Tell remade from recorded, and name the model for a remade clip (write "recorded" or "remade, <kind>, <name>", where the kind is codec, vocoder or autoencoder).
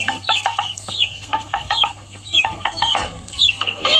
remade, codec, SNAC